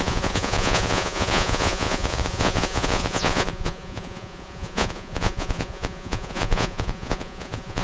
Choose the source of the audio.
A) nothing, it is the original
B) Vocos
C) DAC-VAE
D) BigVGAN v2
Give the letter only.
B